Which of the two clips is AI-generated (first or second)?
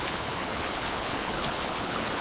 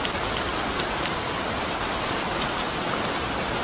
first